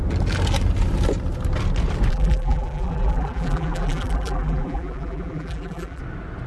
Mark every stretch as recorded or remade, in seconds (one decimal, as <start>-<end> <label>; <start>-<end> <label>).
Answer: 0.0-2.1 recorded; 2.1-6.0 remade; 6.0-6.5 recorded